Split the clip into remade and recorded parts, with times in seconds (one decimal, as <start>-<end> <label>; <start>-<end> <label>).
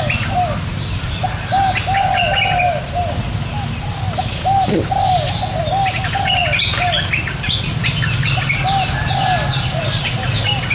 0.0-10.7 recorded